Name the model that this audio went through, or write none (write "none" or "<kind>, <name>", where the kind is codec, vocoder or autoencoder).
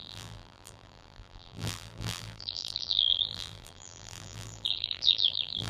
vocoder, BigVGAN v2